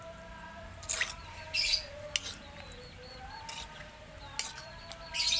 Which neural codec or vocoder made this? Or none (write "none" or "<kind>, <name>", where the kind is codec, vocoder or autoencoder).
none